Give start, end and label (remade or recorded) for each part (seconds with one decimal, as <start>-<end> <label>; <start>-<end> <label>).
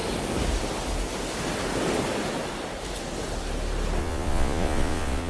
0.0-4.0 recorded; 4.0-5.3 remade